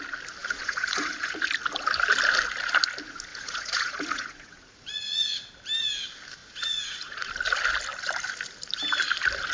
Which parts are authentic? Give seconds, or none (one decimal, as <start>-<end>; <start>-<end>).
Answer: 0.0-0.4; 1.5-3.3; 5.5-6.4; 7.3-9.5